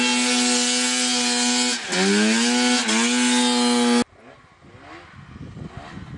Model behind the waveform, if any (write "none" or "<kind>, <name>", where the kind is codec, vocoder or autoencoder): none